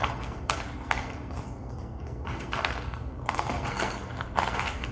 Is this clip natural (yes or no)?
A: no